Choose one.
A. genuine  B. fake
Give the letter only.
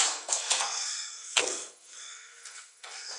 B